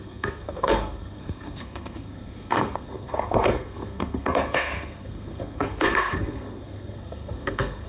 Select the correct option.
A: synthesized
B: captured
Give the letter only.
A